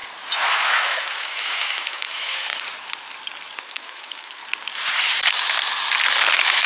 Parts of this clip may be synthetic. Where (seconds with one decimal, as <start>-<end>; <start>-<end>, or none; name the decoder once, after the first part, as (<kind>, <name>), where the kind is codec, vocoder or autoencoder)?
0.5-2.5 (autoencoder, DAC-VAE); 3.6-4.4; 6.3-6.7